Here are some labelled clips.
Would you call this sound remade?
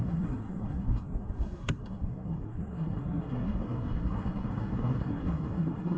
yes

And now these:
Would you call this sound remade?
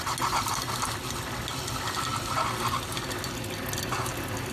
no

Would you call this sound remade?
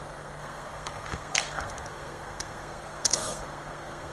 yes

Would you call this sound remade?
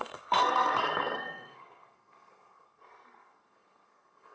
yes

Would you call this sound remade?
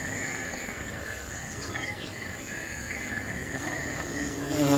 yes